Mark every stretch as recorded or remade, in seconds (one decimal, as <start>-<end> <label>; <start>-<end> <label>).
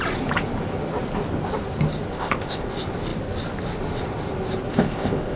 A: 0.0-2.1 recorded; 2.1-2.7 remade; 2.7-4.7 recorded; 4.7-5.4 remade